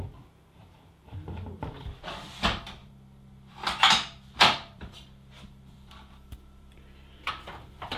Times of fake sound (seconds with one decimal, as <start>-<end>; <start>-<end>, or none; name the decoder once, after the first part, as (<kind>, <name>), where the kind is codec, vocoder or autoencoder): 0.6-2.2 (vocoder, BigVGAN v2); 2.8-7.6